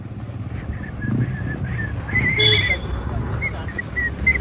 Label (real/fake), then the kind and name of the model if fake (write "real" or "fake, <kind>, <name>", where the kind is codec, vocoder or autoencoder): real